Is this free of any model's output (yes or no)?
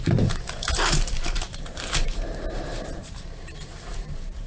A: no